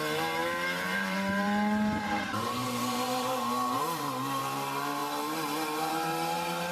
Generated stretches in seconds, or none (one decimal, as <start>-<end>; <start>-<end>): 0.0-6.7